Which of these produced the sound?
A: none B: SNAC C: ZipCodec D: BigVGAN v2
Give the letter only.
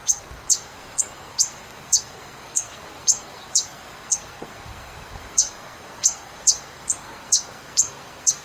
B